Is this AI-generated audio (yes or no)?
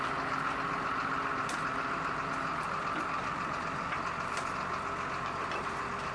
no